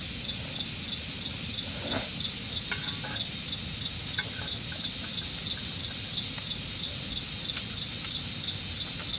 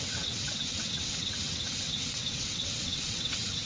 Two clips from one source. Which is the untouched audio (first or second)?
first